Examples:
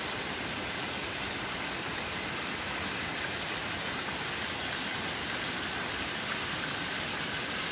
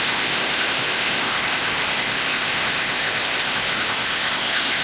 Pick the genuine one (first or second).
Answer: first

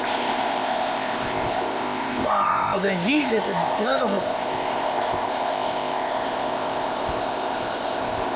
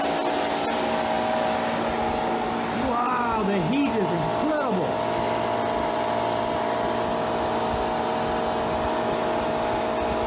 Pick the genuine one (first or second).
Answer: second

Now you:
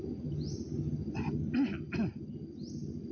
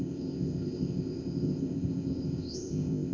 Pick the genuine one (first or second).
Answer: first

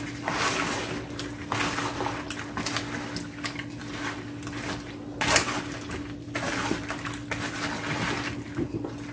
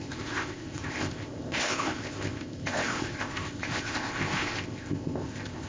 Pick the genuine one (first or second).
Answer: first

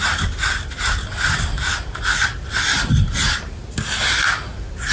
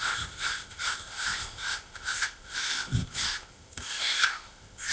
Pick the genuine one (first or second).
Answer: first